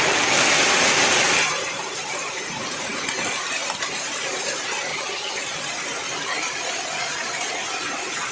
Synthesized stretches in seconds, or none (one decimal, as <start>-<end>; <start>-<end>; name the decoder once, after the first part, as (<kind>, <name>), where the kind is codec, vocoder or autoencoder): 4.9-5.4 (vocoder, HiFi-GAN)